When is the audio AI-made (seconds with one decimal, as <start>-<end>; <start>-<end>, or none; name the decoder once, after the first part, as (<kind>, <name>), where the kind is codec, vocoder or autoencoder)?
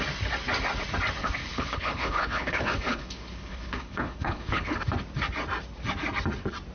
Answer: 1.2-4.8 (codec, HILCodec)